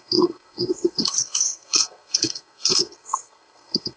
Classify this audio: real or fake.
fake